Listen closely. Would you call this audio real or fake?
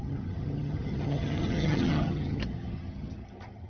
fake